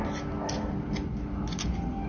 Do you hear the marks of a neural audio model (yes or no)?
no